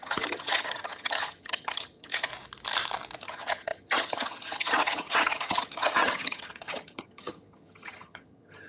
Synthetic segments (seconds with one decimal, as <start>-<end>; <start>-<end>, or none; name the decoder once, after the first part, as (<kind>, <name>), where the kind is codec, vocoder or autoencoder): 0.0-2.3 (vocoder, HiFi-GAN); 3.2-8.7